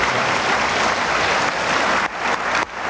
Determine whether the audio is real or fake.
real